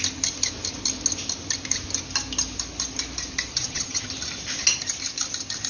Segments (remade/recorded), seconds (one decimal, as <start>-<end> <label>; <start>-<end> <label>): 0.0-3.5 recorded; 3.5-4.1 remade; 4.1-5.7 recorded